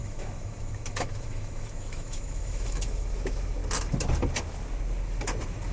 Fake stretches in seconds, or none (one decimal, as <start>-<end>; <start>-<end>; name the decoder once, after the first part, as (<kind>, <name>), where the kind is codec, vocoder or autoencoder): 0.0-3.6 (autoencoder, DAC-VAE)